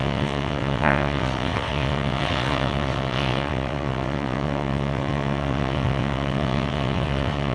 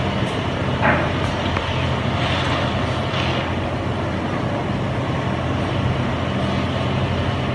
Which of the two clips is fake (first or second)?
first